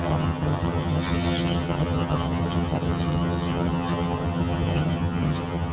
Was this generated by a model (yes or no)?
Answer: yes